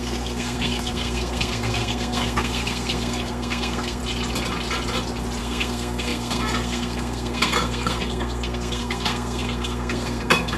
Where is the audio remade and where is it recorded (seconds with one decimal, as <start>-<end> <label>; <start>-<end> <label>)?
0.0-4.0 remade; 4.0-5.4 recorded; 5.4-10.6 remade